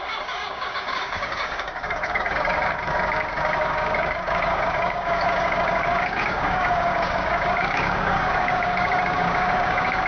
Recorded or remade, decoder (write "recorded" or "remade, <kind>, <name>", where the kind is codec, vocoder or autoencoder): remade, codec, DAC